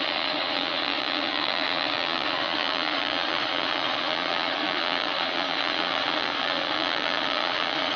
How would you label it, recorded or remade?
remade